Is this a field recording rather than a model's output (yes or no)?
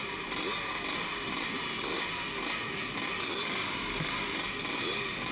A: yes